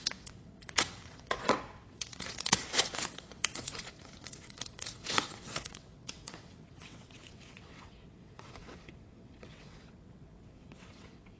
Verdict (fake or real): fake